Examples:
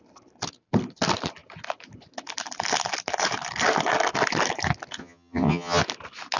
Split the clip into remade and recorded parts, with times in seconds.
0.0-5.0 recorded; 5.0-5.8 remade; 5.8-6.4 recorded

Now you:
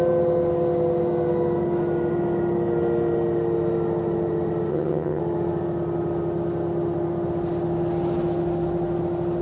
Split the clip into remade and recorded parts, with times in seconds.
0.0-4.7 recorded; 4.7-5.2 remade; 5.2-9.4 recorded

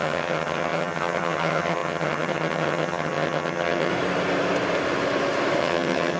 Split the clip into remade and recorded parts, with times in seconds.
0.0-3.9 remade; 3.9-5.6 recorded; 5.6-6.2 remade

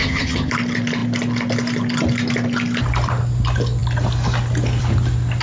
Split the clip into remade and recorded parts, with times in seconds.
0.0-0.5 remade; 0.5-5.4 recorded

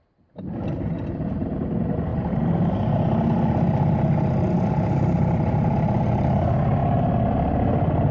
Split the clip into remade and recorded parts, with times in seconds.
0.0-8.1 recorded

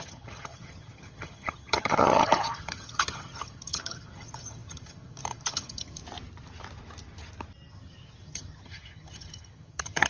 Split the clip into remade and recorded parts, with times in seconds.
0.0-6.0 remade; 6.0-7.7 recorded; 7.7-10.1 remade

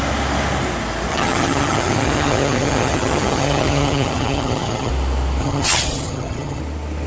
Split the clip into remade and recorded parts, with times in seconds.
0.0-1.1 recorded; 1.1-4.9 remade; 4.9-5.4 recorded; 5.4-6.6 remade; 6.6-7.1 recorded